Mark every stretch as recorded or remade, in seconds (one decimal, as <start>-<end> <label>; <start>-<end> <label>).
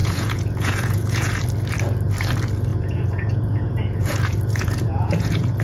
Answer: 0.0-1.4 remade; 1.4-2.7 recorded; 2.7-5.6 remade